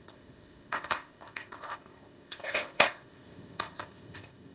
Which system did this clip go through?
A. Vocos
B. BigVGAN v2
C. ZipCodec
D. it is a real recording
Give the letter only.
C